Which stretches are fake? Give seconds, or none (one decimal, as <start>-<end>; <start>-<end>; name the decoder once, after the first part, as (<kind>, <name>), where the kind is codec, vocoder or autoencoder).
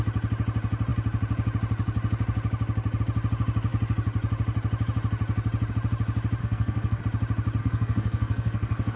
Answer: 6.4-7.0 (codec, SNAC); 7.6-9.0